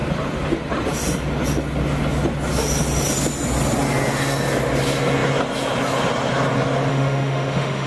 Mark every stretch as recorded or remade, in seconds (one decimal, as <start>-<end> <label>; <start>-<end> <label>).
0.0-6.9 recorded; 6.9-7.9 remade